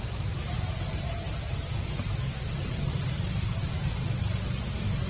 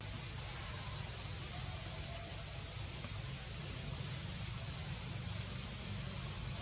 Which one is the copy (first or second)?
first